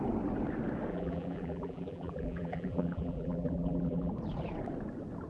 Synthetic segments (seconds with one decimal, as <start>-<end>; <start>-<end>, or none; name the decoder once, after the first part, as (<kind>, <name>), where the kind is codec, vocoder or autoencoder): 0.9-4.1 (vocoder, BigVGAN v2)